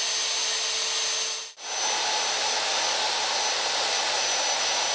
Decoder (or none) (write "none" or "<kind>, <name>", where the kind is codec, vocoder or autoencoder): none